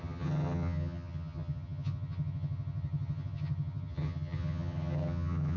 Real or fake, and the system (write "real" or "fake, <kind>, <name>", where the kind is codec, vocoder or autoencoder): fake, vocoder, HiFi-GAN